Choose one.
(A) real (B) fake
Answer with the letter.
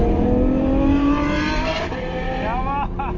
A